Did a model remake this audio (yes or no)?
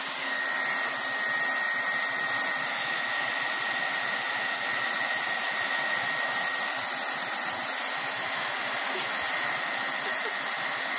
no